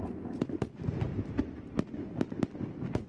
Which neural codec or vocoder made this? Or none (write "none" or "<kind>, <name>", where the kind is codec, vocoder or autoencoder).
none